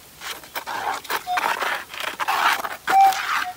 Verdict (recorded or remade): recorded